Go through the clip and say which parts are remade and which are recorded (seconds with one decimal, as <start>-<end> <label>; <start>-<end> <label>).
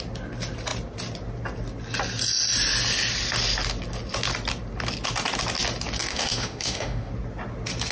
0.0-6.1 recorded; 6.1-7.1 remade; 7.1-7.9 recorded